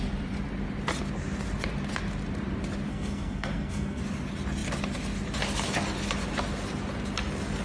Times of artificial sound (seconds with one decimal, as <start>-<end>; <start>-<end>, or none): 2.9-4.0